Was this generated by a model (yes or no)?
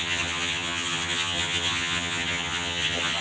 yes